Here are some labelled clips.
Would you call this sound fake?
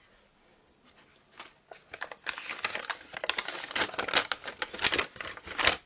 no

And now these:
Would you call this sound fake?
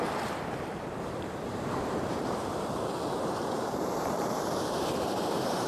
yes